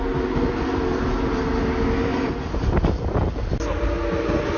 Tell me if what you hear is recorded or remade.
recorded